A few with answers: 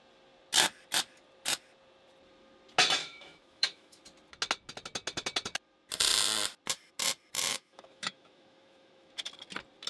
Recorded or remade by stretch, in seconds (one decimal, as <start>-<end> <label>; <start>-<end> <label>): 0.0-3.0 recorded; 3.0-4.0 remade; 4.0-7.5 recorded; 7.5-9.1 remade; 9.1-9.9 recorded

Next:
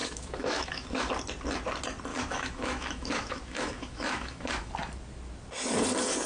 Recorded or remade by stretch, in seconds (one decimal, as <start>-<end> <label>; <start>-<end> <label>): 0.0-1.1 remade; 1.1-2.1 recorded; 2.1-4.7 remade; 4.7-6.3 recorded

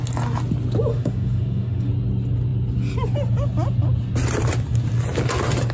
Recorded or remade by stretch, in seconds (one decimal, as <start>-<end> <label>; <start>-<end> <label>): 0.0-0.9 recorded; 0.9-1.9 remade; 1.9-5.7 recorded